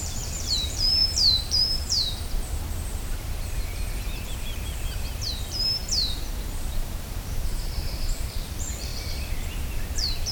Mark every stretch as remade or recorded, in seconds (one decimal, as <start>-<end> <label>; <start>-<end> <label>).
0.0-10.3 remade